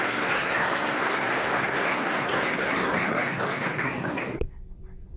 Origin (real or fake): fake